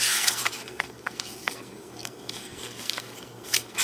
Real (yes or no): no